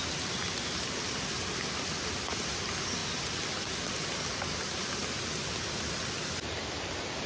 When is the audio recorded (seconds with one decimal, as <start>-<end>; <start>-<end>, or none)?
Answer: 0.0-7.3